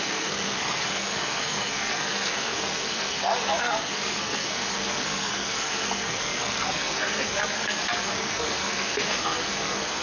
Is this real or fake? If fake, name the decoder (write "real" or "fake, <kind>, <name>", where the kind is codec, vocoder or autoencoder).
fake, codec, SNAC